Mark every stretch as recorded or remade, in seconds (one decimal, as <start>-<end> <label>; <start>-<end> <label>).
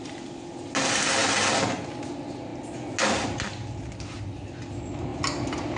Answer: 0.0-5.8 recorded